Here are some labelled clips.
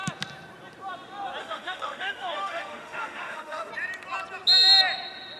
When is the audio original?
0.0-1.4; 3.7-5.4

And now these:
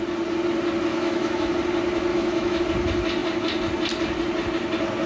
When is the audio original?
0.0-0.9; 1.5-2.1; 2.6-5.1

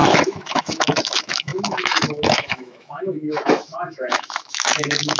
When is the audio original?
none